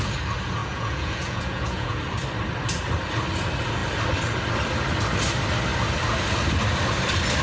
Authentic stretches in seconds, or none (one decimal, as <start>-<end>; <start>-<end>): 0.0-0.6; 2.0-7.4